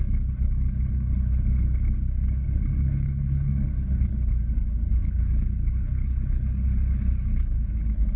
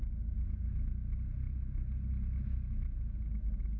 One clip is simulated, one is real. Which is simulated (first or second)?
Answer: first